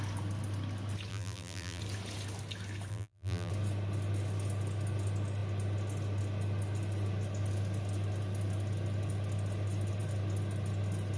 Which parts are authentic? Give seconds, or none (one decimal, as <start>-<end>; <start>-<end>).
0.0-1.1; 1.8-2.9; 3.5-11.2